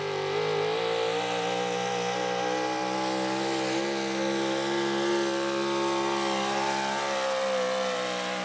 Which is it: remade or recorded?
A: recorded